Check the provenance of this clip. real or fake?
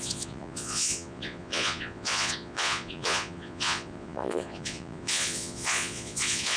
fake